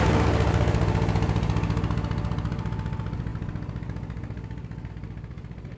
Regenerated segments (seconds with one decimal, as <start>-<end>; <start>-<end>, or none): none